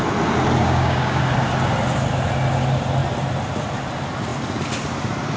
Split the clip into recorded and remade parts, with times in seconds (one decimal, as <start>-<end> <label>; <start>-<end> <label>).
0.0-0.6 recorded; 0.6-1.2 remade; 1.2-5.4 recorded